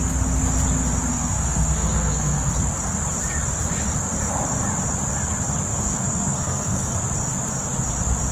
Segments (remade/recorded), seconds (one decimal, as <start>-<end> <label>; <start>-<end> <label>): 0.0-1.1 recorded; 1.1-2.5 remade; 2.5-5.7 recorded; 5.7-6.9 remade; 6.9-8.3 recorded